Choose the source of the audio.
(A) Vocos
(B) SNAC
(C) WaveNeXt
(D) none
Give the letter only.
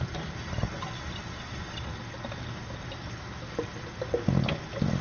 D